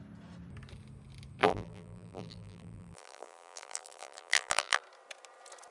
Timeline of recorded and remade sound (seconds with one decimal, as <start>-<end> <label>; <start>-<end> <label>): 0.0-1.4 recorded; 1.4-4.8 remade; 4.8-5.7 recorded